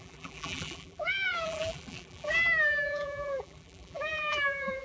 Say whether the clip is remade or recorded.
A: remade